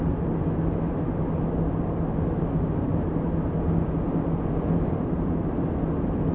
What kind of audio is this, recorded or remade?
recorded